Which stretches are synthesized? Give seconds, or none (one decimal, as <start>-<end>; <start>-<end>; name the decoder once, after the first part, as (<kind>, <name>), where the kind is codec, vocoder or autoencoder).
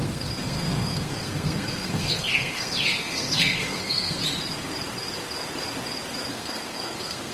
0.0-4.2 (codec, SNAC); 6.3-7.3